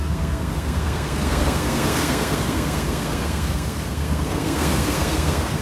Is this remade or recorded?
remade